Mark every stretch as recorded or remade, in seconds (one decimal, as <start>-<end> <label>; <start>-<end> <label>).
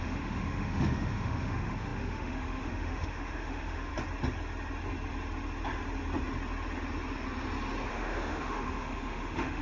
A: 0.0-3.9 remade; 3.9-7.9 recorded; 7.9-9.6 remade